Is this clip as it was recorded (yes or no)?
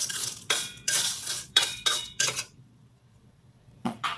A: no